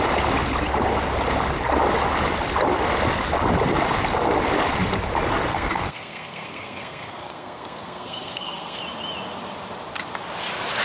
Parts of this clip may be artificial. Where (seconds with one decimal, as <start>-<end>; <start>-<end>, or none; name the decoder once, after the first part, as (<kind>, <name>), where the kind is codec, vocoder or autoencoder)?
5.5-8.8 (codec, SNAC)